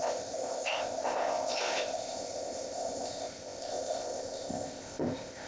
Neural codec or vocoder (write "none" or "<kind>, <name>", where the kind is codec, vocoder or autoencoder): codec, ZipCodec